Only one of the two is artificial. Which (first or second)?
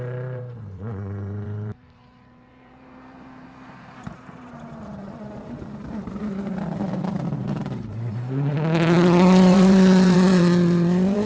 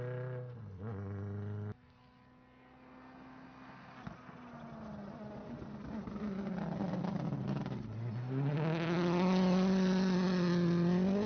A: first